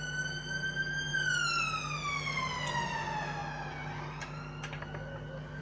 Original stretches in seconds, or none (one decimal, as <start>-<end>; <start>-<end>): 0.0-5.6